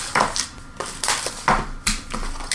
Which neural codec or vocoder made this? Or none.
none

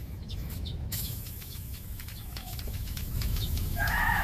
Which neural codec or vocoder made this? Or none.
autoencoder, DAC-VAE